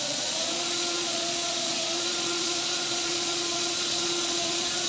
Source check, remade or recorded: remade